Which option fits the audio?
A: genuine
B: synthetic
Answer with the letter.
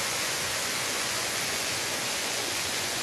B